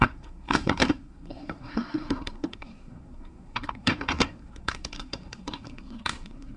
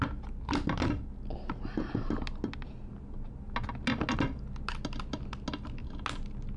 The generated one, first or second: first